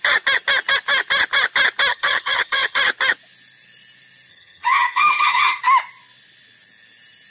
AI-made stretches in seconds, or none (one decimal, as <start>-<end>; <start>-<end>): 1.9-2.8; 4.3-5.6

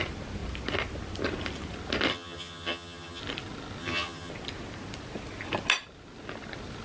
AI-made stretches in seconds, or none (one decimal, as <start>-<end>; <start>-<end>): 2.1-3.2; 3.8-4.3

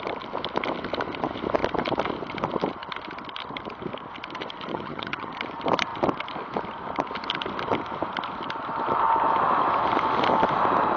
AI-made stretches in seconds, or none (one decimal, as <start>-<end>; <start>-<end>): 4.7-5.3

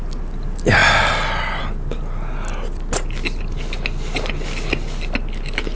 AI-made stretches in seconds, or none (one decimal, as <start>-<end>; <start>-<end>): none